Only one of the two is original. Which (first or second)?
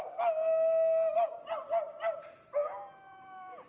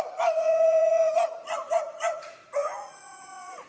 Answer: first